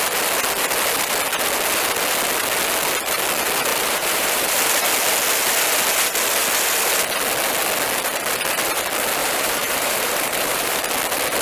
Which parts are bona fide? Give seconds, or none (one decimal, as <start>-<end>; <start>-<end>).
0.0-3.7; 4.6-9.2; 10.8-11.4